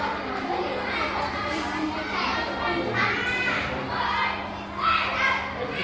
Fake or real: real